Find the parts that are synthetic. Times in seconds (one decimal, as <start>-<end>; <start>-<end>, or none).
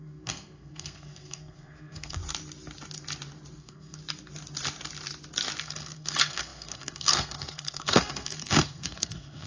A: 0.0-2.2; 3.6-4.0; 5.6-9.5